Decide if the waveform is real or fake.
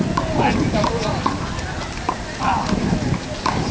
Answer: real